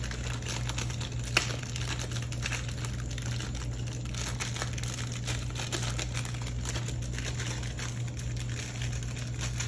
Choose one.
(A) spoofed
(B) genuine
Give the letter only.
B